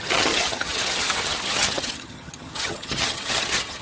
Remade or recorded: remade